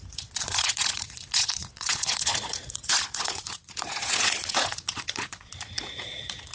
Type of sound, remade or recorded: remade